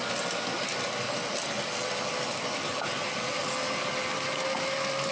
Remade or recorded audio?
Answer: recorded